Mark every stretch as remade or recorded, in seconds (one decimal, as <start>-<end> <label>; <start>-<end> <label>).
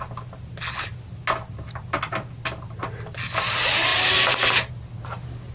0.0-5.5 recorded